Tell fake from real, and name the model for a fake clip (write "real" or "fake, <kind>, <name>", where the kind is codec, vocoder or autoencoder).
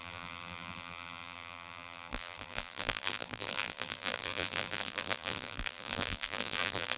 fake, vocoder, BigVGAN v2